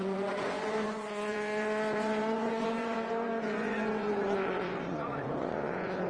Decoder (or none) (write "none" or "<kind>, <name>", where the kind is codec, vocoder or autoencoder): vocoder, Vocos